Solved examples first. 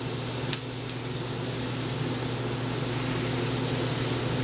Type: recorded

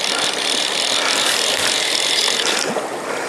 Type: recorded